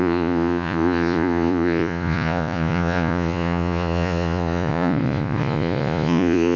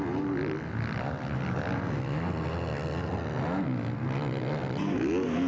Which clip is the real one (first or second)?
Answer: second